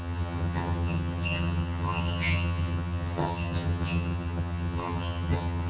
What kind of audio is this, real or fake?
fake